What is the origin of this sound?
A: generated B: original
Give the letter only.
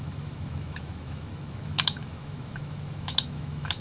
A